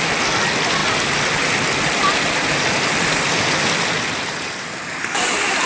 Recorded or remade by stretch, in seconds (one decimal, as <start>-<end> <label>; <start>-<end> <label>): 0.0-5.7 recorded